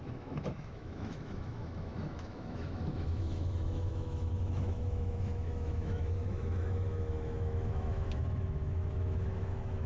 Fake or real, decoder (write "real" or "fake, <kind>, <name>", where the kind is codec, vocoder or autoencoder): fake, autoencoder, DAC-VAE